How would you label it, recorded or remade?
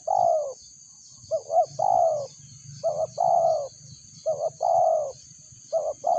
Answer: recorded